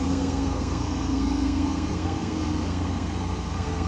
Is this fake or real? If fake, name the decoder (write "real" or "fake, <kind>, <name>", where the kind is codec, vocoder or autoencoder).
fake, codec, SNAC